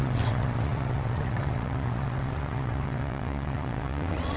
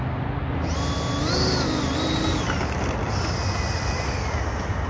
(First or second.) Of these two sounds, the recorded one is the second